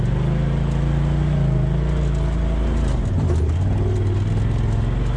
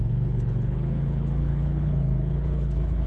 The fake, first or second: second